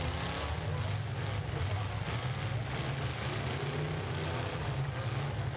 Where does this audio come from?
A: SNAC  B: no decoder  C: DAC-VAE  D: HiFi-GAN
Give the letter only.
B